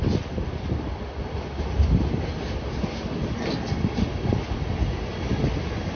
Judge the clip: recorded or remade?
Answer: recorded